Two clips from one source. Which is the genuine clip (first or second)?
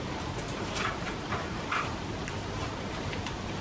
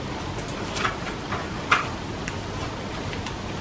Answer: second